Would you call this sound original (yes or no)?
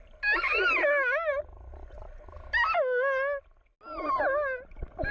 yes